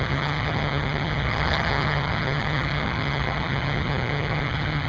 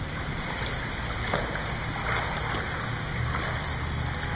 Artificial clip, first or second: first